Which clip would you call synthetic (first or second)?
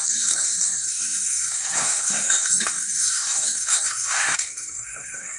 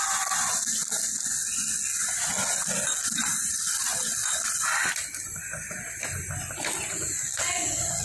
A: first